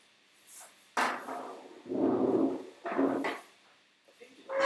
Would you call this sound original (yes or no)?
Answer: yes